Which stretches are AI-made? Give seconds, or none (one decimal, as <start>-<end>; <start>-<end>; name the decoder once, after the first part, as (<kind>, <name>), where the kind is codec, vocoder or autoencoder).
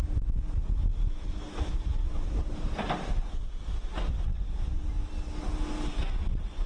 1.0-2.1 (autoencoder, DAC-VAE)